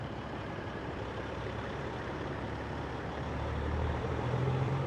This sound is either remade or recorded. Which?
remade